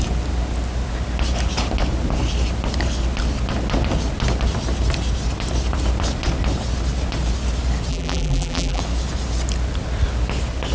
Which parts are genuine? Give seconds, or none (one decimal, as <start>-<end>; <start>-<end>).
0.0-7.9; 8.8-10.7